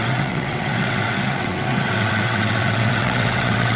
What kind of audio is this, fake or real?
fake